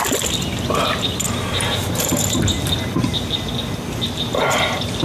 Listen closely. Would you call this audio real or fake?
real